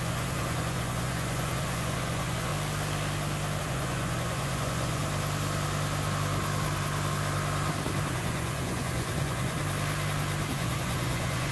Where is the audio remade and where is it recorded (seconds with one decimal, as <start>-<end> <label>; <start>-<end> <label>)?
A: 0.0-2.5 remade; 2.5-3.6 recorded; 3.6-5.0 remade; 5.0-8.1 recorded; 8.1-9.6 remade; 9.6-10.5 recorded; 10.5-11.5 remade